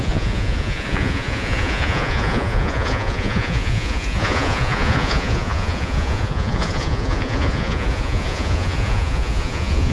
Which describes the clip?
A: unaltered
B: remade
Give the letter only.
B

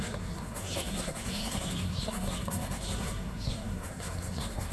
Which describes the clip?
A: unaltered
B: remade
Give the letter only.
B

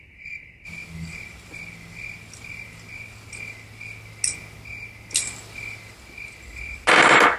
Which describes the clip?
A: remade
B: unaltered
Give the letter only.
B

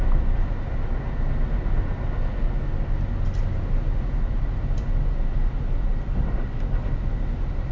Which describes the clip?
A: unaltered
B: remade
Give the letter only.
A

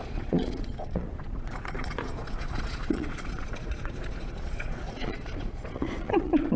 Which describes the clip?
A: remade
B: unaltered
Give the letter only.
A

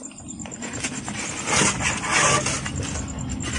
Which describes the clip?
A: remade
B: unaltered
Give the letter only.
B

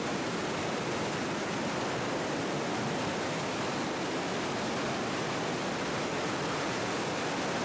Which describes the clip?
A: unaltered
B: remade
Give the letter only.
A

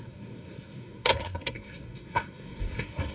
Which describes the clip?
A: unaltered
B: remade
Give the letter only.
B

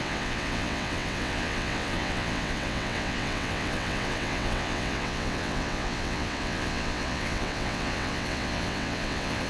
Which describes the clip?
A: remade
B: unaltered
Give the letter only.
A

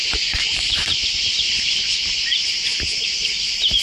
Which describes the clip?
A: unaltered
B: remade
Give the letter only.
B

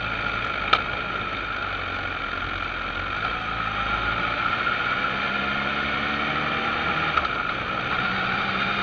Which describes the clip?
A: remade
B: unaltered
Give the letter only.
B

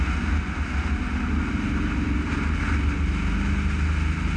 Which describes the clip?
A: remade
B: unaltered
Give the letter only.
B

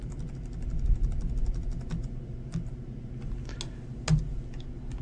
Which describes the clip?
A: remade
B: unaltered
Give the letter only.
B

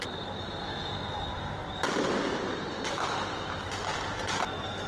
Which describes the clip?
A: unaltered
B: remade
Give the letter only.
A